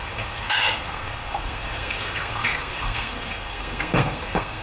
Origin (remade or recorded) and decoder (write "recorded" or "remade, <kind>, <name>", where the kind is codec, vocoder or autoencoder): remade, codec, SNAC